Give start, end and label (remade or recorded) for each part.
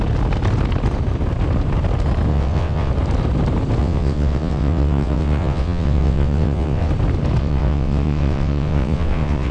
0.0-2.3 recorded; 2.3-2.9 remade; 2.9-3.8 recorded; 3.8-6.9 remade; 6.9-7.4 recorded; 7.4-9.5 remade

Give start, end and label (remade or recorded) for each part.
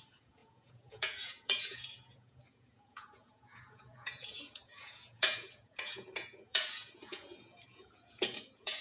0.0-8.8 remade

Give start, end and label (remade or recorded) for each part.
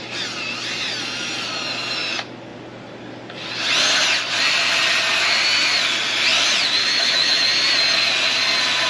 0.0-6.8 recorded; 6.8-7.4 remade; 7.4-8.9 recorded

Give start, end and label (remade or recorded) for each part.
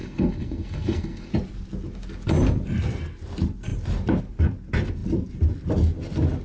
0.0-1.3 remade; 1.3-6.4 recorded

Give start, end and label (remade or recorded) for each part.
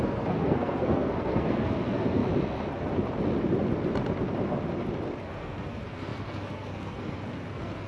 0.0-2.2 remade; 2.2-5.2 recorded; 5.2-7.9 remade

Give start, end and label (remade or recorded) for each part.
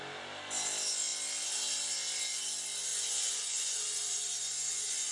0.0-2.9 recorded; 2.9-5.1 remade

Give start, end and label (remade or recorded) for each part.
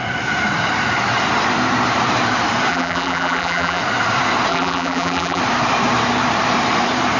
0.0-2.7 recorded; 2.7-3.8 remade; 3.8-4.5 recorded; 4.5-5.4 remade; 5.4-7.2 recorded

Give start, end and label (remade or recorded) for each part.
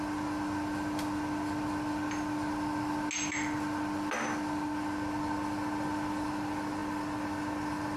0.0-8.0 recorded